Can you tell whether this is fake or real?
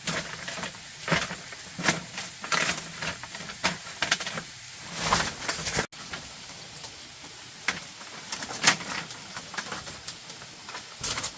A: real